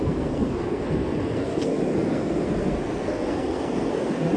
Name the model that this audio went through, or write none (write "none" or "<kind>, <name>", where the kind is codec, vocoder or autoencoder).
codec, SNAC